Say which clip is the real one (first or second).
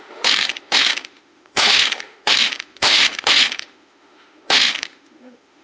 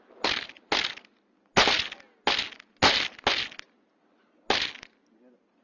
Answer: second